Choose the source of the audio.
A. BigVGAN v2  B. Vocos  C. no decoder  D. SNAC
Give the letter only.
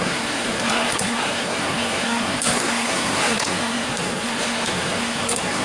D